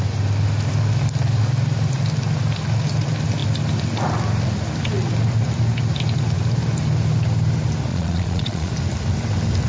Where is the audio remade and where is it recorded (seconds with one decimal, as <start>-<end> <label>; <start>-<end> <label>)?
0.0-7.9 recorded; 7.9-8.7 remade; 8.7-9.7 recorded

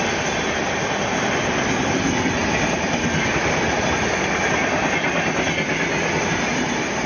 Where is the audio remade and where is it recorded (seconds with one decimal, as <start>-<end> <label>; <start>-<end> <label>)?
0.0-7.1 recorded

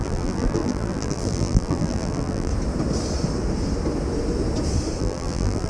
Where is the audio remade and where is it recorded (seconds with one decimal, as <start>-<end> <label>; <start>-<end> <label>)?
0.0-2.5 remade; 2.5-5.0 recorded; 5.0-5.7 remade

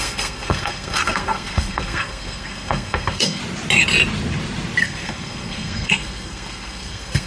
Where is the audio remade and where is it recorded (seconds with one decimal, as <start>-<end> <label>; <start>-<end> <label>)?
0.0-3.4 remade; 3.4-4.8 recorded; 4.8-7.3 remade

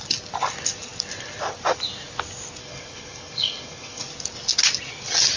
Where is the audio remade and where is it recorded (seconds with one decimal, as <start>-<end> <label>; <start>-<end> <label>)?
0.0-2.6 recorded; 2.6-4.0 remade; 4.0-5.4 recorded

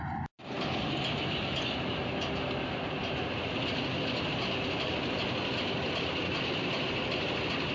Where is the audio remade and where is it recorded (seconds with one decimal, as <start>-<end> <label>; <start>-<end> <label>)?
0.0-7.7 recorded

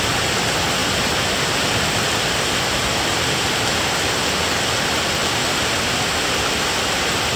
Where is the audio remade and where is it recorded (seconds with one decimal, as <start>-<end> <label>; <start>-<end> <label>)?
0.0-7.4 recorded